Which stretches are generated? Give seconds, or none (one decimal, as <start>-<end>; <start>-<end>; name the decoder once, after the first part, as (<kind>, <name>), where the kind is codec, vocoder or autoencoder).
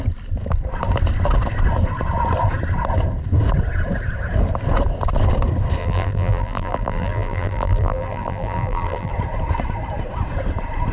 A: 5.8-9.1 (vocoder, BigVGAN v2)